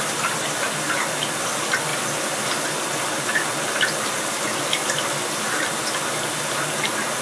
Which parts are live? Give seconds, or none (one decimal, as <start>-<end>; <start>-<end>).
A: 0.0-7.2